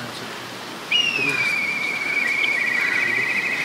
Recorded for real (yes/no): yes